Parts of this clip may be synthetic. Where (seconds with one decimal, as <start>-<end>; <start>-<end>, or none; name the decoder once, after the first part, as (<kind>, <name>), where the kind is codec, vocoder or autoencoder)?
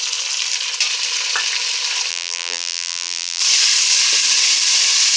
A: 2.1-3.4 (vocoder, BigVGAN v2)